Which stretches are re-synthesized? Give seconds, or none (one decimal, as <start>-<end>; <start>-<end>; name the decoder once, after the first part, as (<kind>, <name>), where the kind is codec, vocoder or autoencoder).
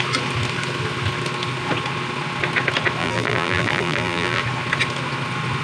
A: 3.0-4.4 (vocoder, BigVGAN v2)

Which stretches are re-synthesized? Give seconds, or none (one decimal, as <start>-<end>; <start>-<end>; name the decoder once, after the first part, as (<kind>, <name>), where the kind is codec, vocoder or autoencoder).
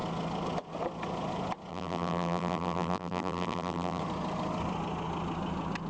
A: 1.7-4.0 (vocoder, BigVGAN v2)